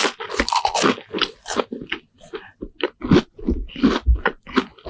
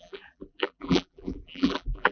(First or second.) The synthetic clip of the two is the second